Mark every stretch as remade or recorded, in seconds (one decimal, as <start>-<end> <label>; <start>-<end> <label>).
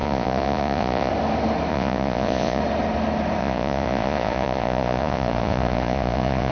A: 0.0-1.1 remade; 1.1-1.7 recorded; 1.7-2.6 remade; 2.6-3.4 recorded; 3.4-6.5 remade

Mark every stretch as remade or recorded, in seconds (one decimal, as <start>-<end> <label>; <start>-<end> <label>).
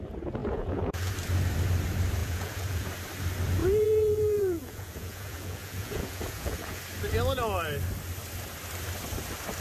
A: 0.0-0.4 recorded; 0.4-1.1 remade; 1.1-2.2 recorded; 2.2-2.9 remade; 2.9-3.6 recorded; 3.6-6.8 remade; 6.8-9.6 recorded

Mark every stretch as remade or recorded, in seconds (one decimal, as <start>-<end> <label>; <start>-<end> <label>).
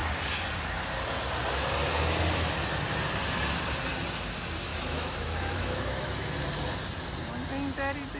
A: 0.0-4.7 recorded; 4.7-6.3 remade; 6.3-8.2 recorded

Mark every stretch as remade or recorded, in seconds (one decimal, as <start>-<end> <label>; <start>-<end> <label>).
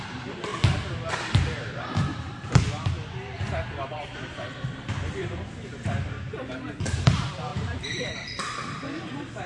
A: 0.0-0.5 remade; 0.5-1.1 recorded; 1.1-2.1 remade; 2.1-3.9 recorded; 3.9-9.5 remade